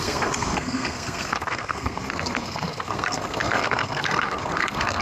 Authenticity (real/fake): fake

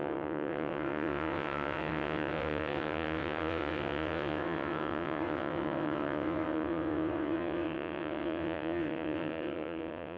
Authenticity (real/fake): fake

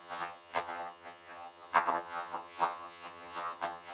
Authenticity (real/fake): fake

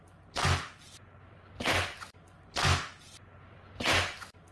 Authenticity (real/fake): real